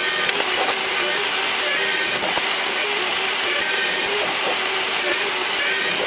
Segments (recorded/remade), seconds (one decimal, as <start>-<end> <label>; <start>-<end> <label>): 0.0-3.1 recorded; 3.1-5.3 remade; 5.3-6.1 recorded